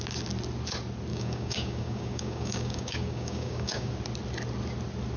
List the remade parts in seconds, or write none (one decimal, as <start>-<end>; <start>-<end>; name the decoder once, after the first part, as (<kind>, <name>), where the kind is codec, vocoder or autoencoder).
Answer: 1.1-3.9 (codec, DAC)